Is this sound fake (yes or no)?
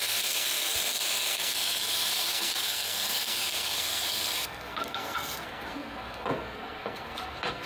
yes